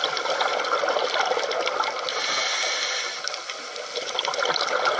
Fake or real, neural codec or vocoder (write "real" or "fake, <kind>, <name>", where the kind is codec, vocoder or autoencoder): real